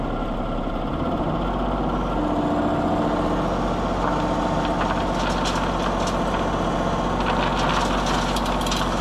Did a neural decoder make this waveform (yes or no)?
no